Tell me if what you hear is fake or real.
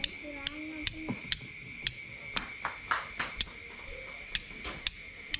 real